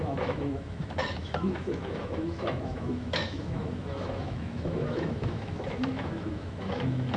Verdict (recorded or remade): remade